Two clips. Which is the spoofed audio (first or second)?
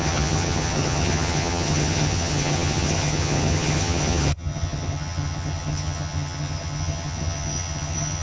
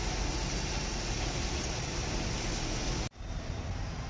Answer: first